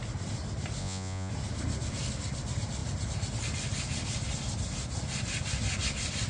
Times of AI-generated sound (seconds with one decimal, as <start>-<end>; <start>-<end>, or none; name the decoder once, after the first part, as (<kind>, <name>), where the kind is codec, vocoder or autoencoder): 0.8-1.3 (vocoder, Vocos)